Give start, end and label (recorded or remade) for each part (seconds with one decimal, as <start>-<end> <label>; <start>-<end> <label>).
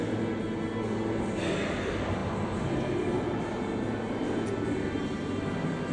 0.0-5.9 recorded